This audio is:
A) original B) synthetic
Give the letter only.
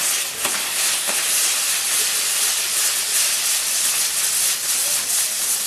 A